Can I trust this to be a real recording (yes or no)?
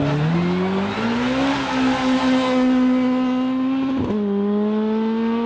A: yes